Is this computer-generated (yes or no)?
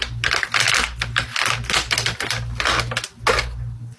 no